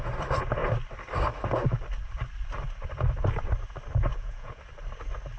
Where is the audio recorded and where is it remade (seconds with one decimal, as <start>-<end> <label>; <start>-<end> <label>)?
0.0-4.1 recorded; 4.1-4.6 remade; 4.6-5.4 recorded